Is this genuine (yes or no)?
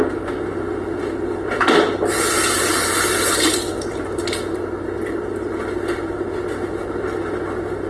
yes